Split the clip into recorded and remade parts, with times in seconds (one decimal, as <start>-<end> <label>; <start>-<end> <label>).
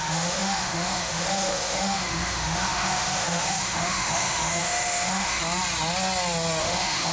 0.0-5.4 remade; 5.4-6.6 recorded; 6.6-7.1 remade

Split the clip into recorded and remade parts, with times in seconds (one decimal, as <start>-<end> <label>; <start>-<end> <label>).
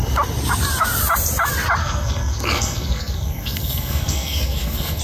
0.0-1.8 recorded; 1.8-5.0 remade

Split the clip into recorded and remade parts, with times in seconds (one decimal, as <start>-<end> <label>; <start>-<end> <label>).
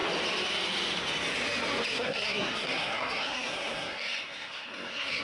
0.0-1.9 recorded; 1.9-5.2 remade